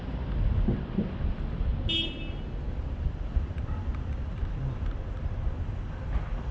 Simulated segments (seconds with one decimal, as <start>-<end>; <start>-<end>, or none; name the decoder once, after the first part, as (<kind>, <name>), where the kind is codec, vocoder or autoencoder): 0.0-1.7 (vocoder, BigVGAN v2); 2.7-6.5